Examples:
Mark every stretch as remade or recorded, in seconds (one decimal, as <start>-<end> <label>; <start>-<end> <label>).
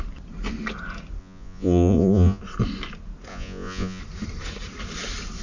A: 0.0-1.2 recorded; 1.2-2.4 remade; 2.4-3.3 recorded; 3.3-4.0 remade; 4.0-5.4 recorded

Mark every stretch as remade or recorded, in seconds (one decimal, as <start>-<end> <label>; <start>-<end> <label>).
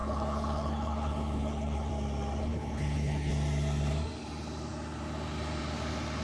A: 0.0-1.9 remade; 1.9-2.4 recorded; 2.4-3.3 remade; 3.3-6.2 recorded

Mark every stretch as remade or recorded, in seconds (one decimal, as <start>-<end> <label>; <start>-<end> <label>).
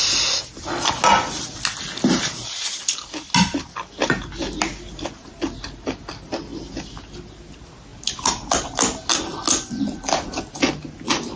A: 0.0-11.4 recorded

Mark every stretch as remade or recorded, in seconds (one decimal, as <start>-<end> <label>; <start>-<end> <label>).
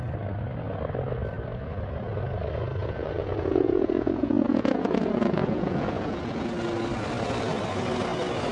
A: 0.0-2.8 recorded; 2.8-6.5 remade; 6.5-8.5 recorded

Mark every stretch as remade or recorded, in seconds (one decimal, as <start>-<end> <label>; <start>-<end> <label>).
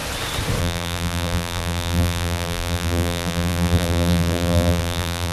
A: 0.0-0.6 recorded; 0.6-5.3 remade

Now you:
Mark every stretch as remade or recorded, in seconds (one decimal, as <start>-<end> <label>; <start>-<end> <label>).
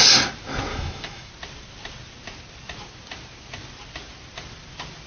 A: 0.0-0.7 recorded; 0.7-1.3 remade; 1.3-5.1 recorded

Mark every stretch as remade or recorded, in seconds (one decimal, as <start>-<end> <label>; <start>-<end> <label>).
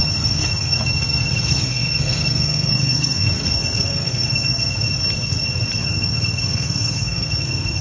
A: 0.0-4.7 remade; 4.7-5.8 recorded; 5.8-7.8 remade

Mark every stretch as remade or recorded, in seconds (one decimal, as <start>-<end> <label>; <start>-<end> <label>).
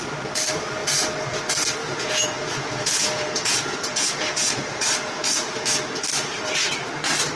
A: 0.0-1.8 recorded; 1.8-5.7 remade; 5.7-7.4 recorded